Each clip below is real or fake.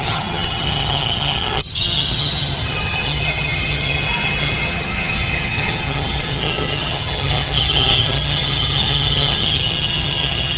fake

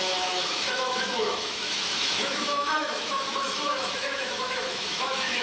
fake